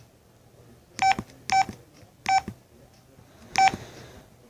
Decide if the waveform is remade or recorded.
recorded